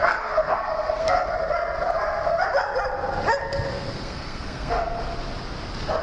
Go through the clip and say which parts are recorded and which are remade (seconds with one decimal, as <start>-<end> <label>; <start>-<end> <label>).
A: 0.0-1.3 remade; 1.3-3.7 recorded; 3.7-5.0 remade; 5.0-6.0 recorded